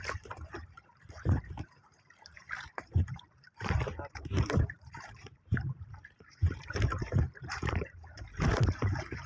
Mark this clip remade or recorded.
remade